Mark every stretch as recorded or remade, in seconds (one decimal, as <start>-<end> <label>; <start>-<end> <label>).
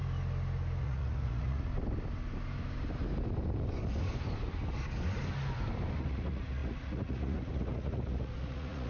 0.0-0.8 recorded; 0.8-1.7 remade; 1.7-6.0 recorded; 6.0-8.9 remade